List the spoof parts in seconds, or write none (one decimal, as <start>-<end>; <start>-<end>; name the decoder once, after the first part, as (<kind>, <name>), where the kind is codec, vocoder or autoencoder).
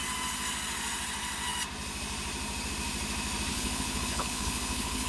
3.5-5.1 (codec, HILCodec)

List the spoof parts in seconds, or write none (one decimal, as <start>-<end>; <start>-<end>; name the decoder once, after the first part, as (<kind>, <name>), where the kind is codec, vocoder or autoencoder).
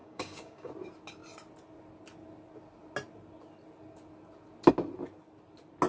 0.0-0.7 (codec, DAC)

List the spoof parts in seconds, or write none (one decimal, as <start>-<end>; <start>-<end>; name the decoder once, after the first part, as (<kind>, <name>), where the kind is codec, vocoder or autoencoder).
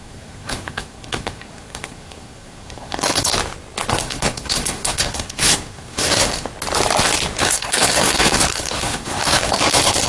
0.0-3.3 (codec, SNAC); 4.0-6.5; 7.4-10.1